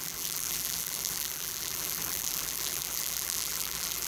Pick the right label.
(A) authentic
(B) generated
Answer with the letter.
B